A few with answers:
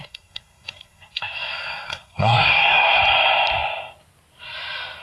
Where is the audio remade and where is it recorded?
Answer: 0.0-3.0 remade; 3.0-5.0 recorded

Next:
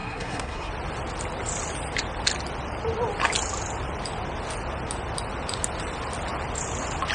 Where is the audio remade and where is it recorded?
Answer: 0.0-0.7 remade; 0.7-7.1 recorded

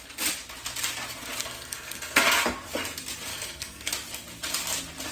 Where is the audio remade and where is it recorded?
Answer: 0.0-1.4 recorded; 1.4-2.2 remade; 2.2-3.3 recorded; 3.3-3.9 remade; 3.9-5.1 recorded

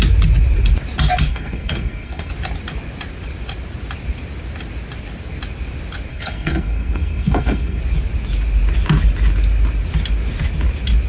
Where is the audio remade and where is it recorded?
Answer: 0.0-1.3 recorded; 1.3-2.3 remade; 2.3-6.1 recorded; 6.1-7.8 remade; 7.8-11.1 recorded

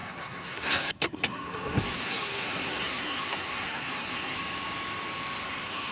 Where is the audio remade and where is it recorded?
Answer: 0.0-4.4 remade; 4.4-5.4 recorded; 5.4-5.9 remade

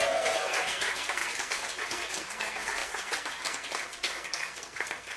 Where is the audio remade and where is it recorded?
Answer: 0.0-5.2 remade

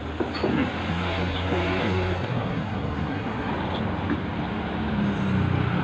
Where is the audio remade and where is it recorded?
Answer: 0.0-0.9 recorded; 0.9-3.5 remade; 3.5-5.8 recorded